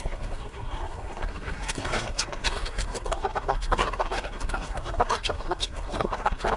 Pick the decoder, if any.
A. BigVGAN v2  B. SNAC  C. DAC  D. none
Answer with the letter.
B